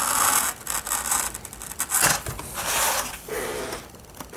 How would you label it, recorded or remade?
recorded